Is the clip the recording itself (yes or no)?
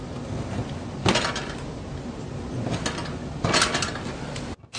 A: yes